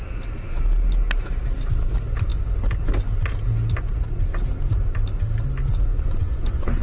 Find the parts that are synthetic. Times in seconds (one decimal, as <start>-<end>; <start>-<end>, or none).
5.9-6.8